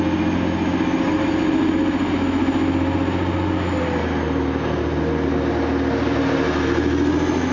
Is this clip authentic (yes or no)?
yes